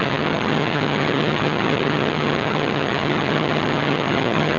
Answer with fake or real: fake